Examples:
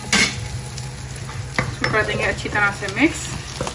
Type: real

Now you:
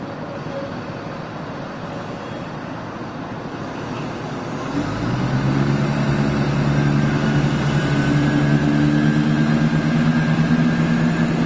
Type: real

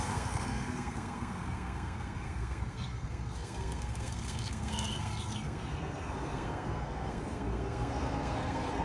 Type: fake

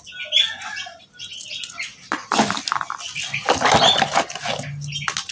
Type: real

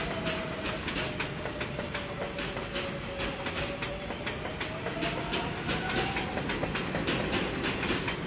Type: real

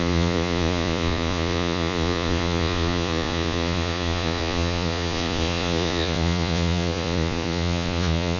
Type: fake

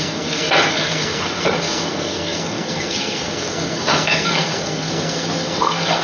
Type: fake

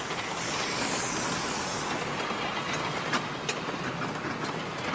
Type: real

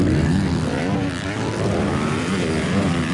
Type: real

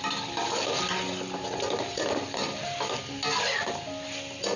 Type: real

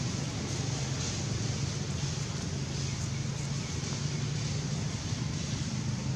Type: real